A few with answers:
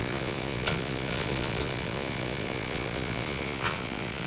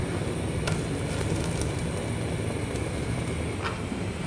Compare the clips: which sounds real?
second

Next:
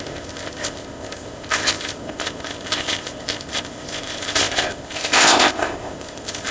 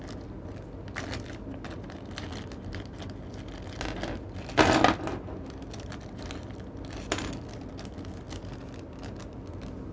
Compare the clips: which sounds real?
second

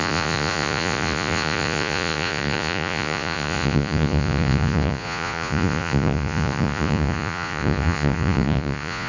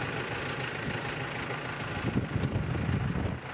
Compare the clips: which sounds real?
second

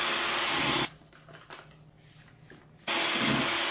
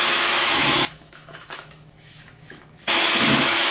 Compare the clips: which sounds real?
first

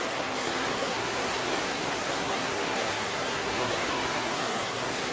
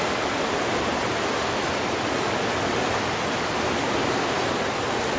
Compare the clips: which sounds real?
second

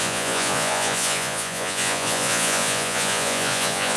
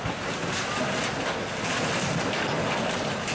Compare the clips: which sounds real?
second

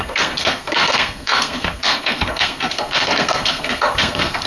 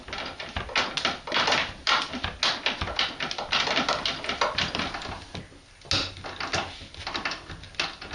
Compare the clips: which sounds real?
second